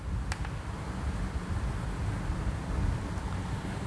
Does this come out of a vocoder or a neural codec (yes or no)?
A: no